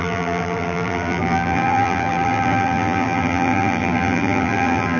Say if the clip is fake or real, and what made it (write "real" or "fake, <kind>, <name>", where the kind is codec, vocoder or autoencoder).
fake, vocoder, BigVGAN v2